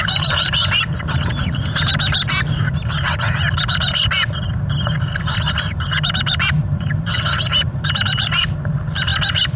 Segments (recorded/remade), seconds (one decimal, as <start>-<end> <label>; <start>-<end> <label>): 0.0-0.6 remade; 0.6-1.3 recorded; 1.3-1.9 remade; 1.9-6.3 recorded; 6.3-9.1 remade; 9.1-9.6 recorded